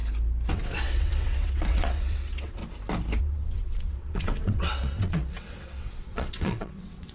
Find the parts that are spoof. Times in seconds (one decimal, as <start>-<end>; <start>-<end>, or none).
0.5-2.6; 3.2-7.1